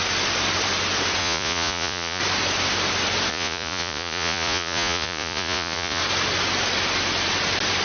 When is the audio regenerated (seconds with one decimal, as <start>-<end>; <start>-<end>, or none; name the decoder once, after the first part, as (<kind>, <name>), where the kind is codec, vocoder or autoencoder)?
1.2-2.2 (vocoder, Vocos); 3.3-6.0